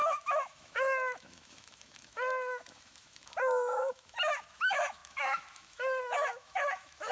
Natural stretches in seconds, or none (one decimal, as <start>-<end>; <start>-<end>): none

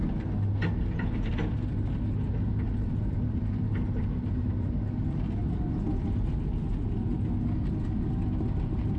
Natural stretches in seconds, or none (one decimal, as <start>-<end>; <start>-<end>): 0.0-9.0

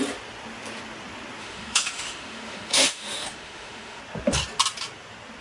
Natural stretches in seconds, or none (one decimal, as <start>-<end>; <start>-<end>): 0.0-1.4; 4.0-5.4

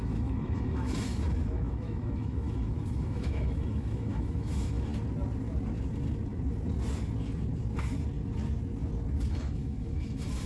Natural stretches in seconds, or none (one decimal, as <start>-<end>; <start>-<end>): 4.9-9.3

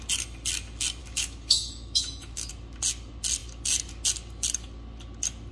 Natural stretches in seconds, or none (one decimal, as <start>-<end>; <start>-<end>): 0.0-1.0; 2.5-5.5

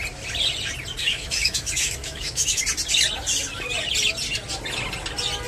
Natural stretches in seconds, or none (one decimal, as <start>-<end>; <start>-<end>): 0.0-1.0; 2.6-5.5